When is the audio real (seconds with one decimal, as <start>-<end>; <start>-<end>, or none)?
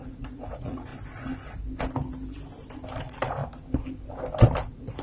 0.9-3.0; 3.4-4.5